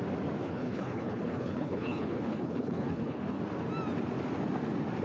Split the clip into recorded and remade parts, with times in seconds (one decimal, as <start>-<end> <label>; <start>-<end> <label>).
0.0-0.4 recorded; 0.4-3.4 remade; 3.4-5.0 recorded